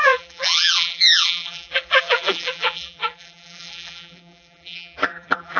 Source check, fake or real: fake